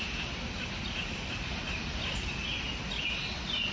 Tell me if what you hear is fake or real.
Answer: real